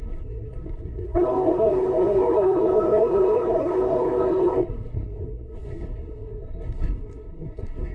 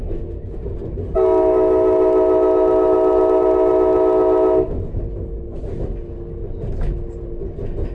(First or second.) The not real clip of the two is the first